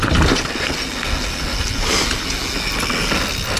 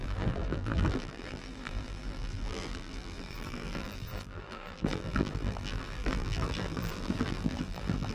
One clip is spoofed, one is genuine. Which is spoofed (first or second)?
second